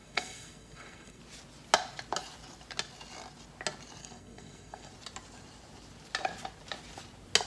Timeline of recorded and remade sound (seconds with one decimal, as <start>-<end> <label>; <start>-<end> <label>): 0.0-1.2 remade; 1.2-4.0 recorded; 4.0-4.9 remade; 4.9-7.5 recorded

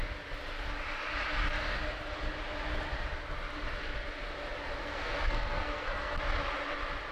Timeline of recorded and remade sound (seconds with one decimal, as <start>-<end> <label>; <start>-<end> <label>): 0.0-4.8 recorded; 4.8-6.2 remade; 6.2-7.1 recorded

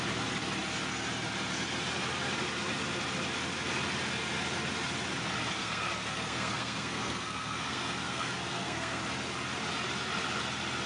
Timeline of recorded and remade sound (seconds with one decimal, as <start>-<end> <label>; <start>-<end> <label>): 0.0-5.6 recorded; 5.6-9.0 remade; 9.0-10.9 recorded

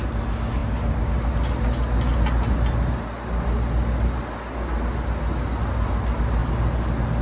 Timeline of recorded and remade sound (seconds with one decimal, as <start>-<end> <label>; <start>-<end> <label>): 0.0-7.2 recorded